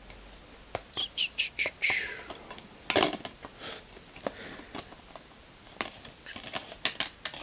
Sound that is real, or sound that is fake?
real